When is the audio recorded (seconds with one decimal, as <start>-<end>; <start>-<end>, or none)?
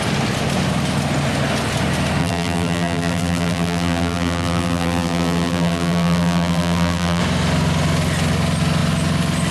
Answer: 0.0-2.2; 7.2-9.5